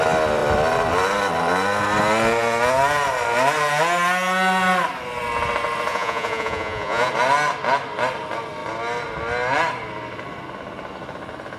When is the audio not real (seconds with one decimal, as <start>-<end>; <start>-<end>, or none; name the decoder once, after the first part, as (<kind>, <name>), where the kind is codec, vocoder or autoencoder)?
5.9-7.1 (vocoder, Vocos)